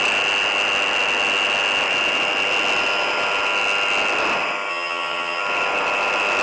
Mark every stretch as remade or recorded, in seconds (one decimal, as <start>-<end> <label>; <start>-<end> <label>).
0.0-4.7 recorded; 4.7-5.4 remade; 5.4-6.4 recorded